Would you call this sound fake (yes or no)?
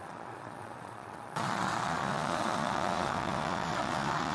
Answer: yes